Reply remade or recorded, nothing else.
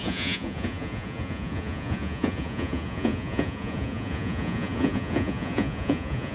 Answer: remade